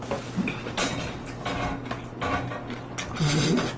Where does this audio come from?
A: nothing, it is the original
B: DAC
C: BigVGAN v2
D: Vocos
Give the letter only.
A